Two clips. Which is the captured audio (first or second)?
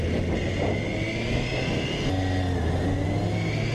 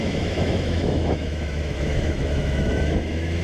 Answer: first